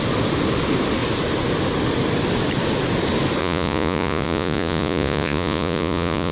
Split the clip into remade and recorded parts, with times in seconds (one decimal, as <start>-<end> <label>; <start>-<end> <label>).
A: 0.0-3.4 recorded; 3.4-6.3 remade